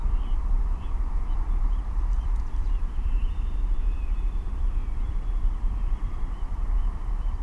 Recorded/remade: remade